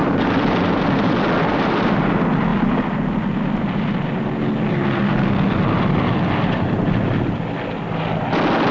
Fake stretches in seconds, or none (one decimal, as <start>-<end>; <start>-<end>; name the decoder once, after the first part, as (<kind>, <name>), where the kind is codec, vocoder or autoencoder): none